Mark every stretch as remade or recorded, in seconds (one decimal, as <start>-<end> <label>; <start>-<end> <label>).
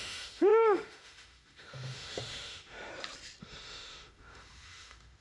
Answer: 0.0-2.9 remade; 2.9-3.4 recorded; 3.4-5.2 remade